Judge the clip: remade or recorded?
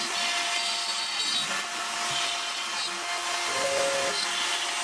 recorded